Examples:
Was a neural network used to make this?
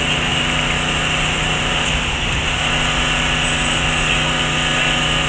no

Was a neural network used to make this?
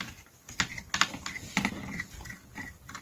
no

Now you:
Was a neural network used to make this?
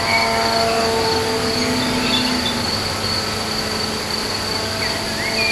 no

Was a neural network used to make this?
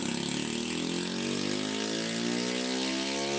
no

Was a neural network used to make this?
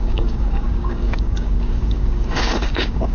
yes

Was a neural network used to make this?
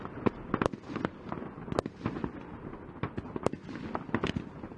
no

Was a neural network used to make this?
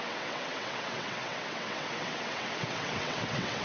yes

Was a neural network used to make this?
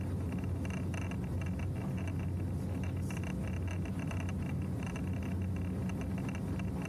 no